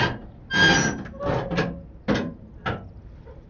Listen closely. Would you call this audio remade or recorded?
recorded